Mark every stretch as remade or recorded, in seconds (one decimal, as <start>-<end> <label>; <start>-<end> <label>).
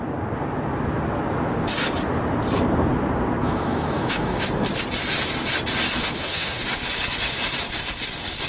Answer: 0.0-3.4 recorded; 3.4-4.4 remade; 4.4-6.0 recorded; 6.0-6.6 remade; 6.6-8.5 recorded